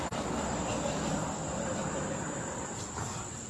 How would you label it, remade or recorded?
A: recorded